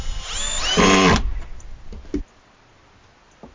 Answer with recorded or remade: recorded